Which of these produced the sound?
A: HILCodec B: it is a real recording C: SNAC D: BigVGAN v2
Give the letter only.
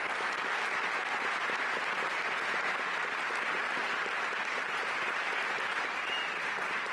B